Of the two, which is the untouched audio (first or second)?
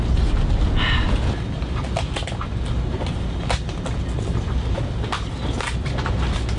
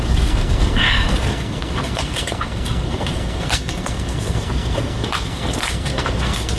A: first